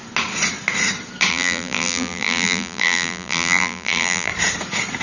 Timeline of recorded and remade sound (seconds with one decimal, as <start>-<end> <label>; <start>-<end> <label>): 0.0-1.3 recorded; 1.3-4.3 remade; 4.3-5.0 recorded